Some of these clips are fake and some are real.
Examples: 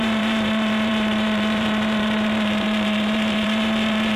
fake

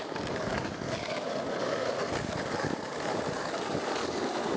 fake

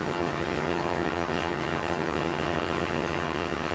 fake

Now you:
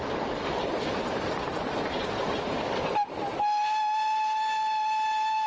real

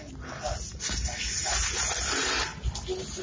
real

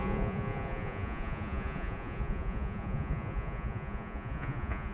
fake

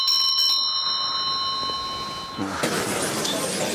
real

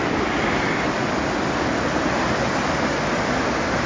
real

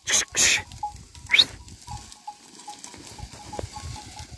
real